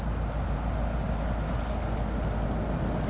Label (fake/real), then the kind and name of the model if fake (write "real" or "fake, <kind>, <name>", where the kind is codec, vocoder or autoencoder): real